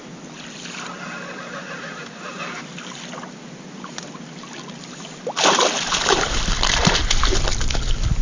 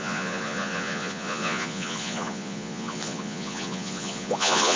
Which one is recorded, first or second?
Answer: first